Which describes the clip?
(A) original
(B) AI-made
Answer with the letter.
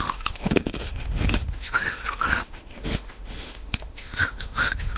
B